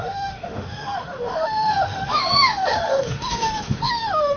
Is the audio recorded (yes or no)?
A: no